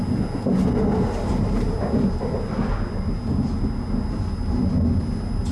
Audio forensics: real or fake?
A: real